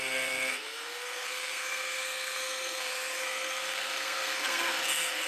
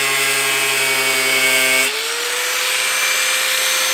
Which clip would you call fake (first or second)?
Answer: first